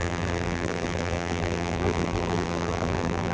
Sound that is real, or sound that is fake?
fake